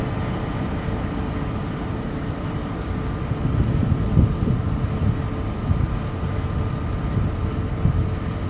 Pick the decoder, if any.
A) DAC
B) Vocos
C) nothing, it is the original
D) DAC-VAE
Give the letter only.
C